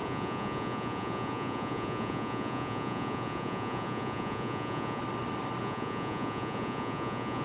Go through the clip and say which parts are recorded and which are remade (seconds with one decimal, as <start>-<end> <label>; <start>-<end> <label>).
0.0-5.0 remade; 5.0-5.6 recorded; 5.6-7.4 remade